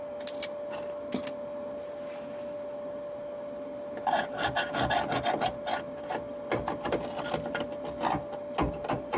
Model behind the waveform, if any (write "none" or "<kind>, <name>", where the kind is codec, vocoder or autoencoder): none